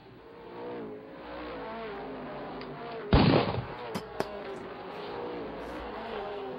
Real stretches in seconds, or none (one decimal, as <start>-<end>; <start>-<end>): 0.0-4.0; 4.4-5.8